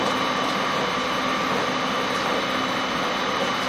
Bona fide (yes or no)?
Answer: yes